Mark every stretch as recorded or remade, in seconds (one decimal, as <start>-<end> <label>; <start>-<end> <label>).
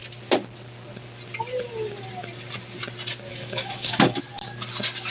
0.0-3.3 recorded; 3.3-4.2 remade; 4.2-5.1 recorded